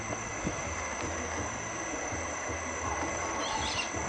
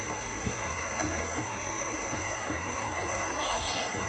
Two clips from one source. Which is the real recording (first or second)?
first